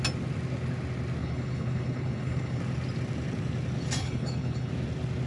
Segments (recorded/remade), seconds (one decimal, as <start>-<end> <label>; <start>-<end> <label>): 0.0-1.2 recorded; 1.2-2.6 remade; 2.6-4.0 recorded; 4.0-4.7 remade; 4.7-5.3 recorded